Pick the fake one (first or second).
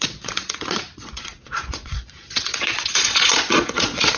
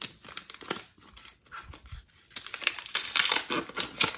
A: first